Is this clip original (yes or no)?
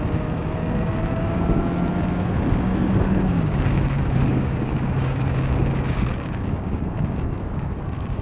no